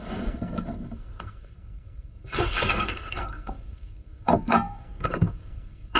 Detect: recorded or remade remade